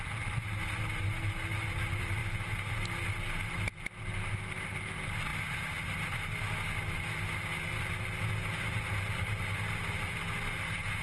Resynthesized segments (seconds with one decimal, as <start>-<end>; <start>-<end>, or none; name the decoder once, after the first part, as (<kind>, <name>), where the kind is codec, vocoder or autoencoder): none